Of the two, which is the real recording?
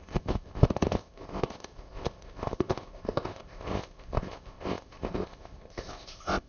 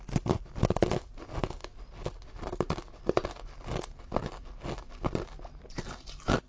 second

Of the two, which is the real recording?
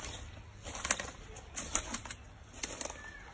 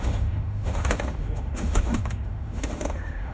first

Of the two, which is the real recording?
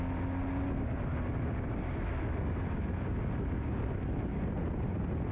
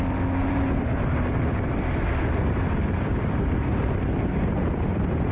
first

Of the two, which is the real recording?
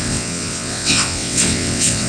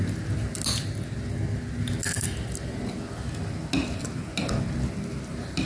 second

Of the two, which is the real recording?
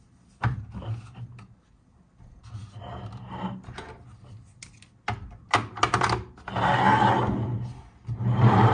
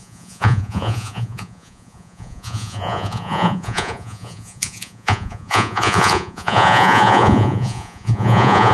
first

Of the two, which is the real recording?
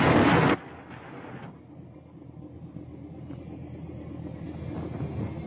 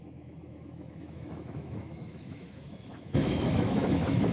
first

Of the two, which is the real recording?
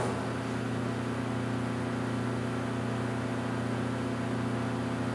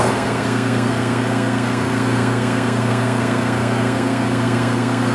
first